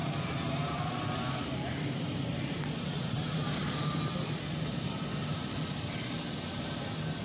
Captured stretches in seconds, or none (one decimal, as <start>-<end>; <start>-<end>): 4.0-5.3; 6.6-7.2